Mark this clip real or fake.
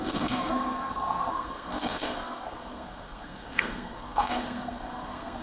fake